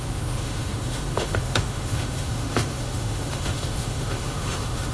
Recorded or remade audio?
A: remade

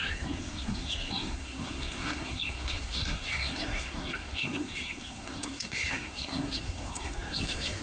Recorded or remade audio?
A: remade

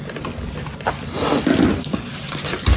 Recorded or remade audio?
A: recorded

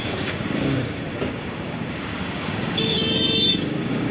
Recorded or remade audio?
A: remade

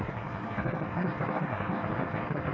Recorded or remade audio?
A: remade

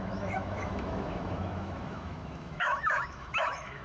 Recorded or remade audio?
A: remade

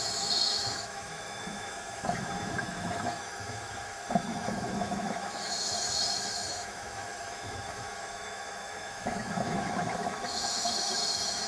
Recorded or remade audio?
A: remade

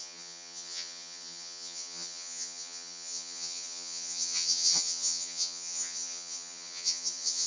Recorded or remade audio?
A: remade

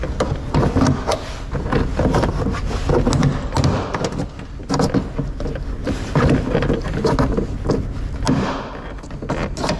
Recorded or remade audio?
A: recorded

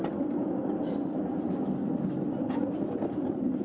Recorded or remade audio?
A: recorded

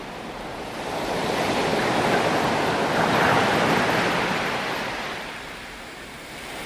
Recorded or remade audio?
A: remade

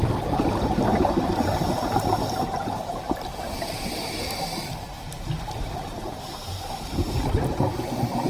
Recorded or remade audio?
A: remade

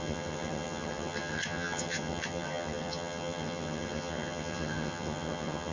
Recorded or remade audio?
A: remade